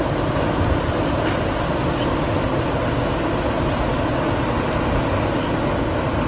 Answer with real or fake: real